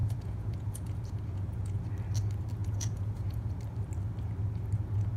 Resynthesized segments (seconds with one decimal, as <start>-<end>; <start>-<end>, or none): 0.0-1.8; 2.6-3.5